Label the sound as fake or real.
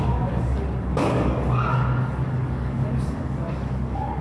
fake